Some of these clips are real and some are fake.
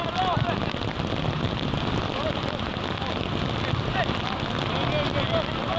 real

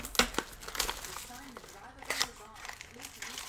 real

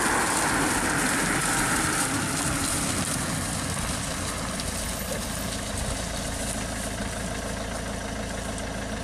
real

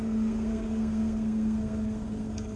fake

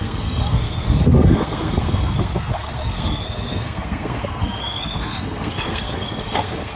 fake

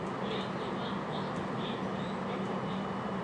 real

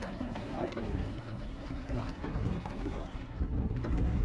fake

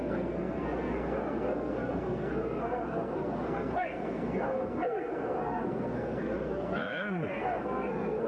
fake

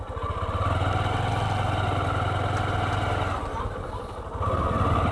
real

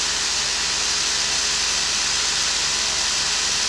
real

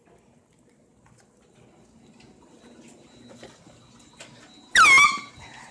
real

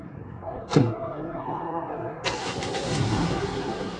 fake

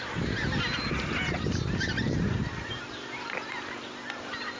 real